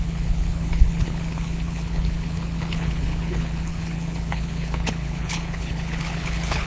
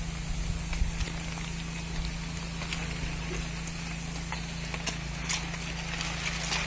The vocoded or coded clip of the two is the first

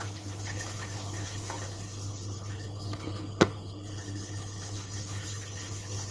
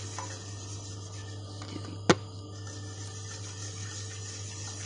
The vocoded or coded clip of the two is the first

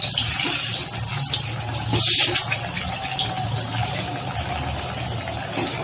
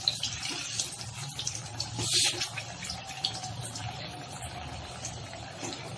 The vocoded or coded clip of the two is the second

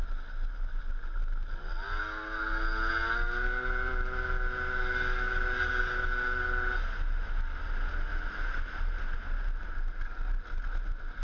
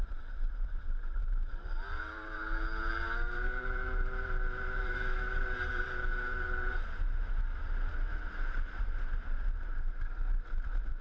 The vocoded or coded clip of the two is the second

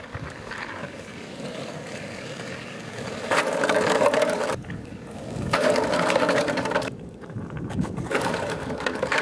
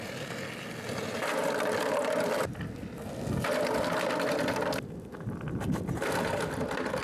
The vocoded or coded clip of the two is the first